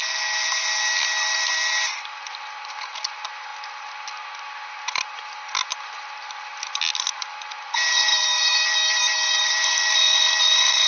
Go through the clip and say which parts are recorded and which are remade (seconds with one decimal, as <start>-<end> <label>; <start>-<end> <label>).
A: 0.0-10.9 recorded